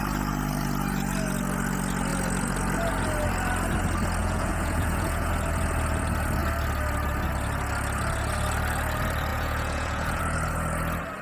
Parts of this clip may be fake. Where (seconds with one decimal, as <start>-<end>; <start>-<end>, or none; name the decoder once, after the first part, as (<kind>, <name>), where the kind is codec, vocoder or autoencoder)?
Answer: 4.2-5.3 (vocoder, Vocos); 9.3-10.2